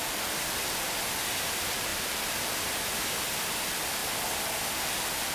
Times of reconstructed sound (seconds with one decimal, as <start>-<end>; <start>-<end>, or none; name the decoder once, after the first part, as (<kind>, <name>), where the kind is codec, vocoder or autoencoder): 1.9-2.6 (vocoder, BigVGAN v2); 4.0-5.3